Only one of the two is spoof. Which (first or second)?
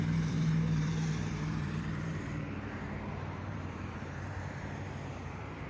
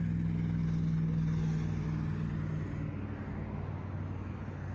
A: first